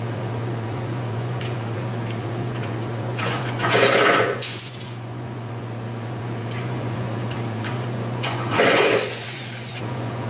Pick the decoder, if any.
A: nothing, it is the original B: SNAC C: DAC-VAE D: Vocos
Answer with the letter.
D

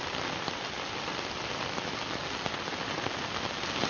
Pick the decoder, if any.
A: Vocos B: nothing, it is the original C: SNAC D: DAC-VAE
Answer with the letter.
B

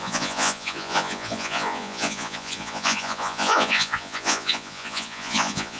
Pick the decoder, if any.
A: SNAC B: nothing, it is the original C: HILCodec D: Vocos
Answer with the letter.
D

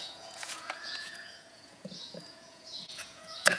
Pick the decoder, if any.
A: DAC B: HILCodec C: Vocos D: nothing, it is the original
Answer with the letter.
C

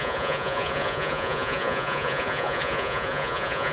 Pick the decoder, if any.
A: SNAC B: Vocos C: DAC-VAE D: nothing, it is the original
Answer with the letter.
B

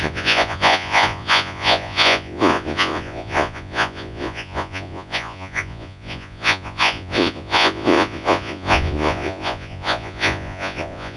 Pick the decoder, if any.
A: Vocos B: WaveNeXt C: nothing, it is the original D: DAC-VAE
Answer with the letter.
A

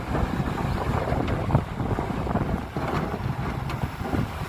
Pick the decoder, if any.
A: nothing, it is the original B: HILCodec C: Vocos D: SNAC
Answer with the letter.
A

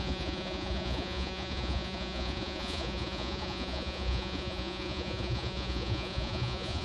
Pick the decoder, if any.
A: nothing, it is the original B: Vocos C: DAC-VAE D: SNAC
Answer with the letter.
B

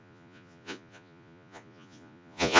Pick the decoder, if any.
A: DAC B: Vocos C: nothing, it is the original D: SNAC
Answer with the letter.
B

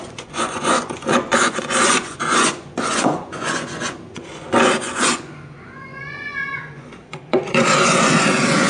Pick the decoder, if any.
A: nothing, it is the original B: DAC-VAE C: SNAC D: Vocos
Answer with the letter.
D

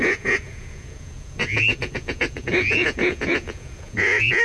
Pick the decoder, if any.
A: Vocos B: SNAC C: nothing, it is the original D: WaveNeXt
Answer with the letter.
A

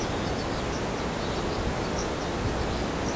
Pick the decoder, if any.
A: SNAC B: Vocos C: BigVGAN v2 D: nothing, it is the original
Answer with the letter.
D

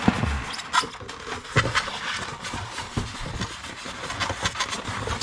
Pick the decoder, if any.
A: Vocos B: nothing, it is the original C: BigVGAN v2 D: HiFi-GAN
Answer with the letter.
B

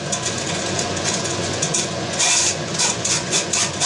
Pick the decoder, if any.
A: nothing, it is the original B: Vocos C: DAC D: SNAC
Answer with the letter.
B